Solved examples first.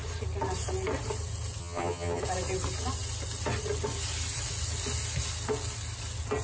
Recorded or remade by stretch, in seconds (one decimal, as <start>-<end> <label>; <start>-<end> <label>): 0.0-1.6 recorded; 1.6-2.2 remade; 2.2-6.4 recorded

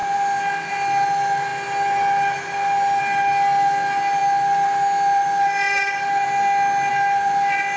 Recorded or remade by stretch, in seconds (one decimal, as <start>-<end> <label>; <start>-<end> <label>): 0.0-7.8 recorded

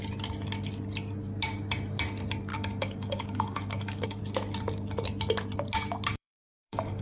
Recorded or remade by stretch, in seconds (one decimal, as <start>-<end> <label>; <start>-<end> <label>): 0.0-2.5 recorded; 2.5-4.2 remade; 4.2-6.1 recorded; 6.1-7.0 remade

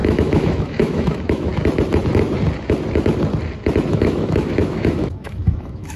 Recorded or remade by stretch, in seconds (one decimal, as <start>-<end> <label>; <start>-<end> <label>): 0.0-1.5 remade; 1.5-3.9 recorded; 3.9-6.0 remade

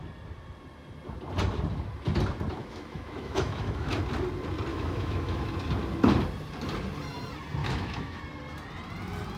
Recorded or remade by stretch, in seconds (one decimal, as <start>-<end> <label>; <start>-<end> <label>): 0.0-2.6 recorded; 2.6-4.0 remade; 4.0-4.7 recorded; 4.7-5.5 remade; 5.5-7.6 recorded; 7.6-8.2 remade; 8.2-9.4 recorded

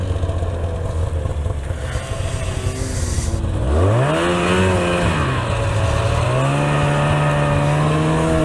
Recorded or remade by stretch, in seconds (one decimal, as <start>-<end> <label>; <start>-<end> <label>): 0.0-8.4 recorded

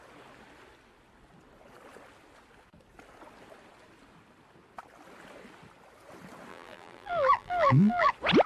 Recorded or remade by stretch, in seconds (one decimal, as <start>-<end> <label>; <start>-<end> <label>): 0.0-6.5 recorded; 6.5-8.1 remade; 8.1-8.5 recorded